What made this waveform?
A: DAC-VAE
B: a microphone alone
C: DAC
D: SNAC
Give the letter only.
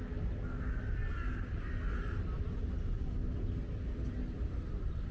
B